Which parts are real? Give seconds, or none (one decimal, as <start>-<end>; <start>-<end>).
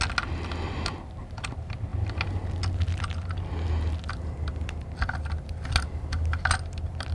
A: 0.0-7.1